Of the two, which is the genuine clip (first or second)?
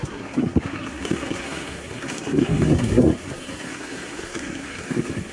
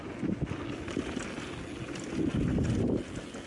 second